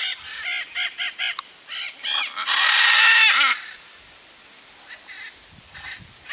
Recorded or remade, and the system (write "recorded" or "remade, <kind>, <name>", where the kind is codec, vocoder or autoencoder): recorded